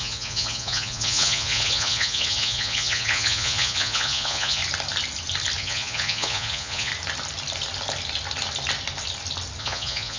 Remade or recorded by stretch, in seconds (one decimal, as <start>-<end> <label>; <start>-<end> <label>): 0.0-4.6 remade; 4.6-5.6 recorded; 5.6-6.9 remade; 6.9-9.6 recorded; 9.6-10.2 remade